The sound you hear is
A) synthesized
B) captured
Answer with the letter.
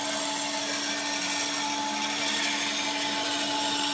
B